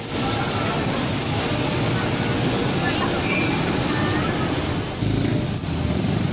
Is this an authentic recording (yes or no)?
yes